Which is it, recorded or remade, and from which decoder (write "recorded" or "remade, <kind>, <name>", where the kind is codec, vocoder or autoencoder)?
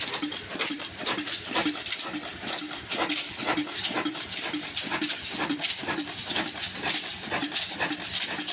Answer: remade, vocoder, BigVGAN v2